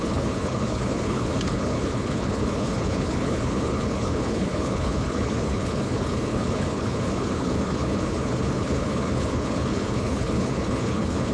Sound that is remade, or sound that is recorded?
remade